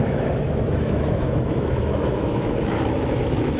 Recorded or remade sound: remade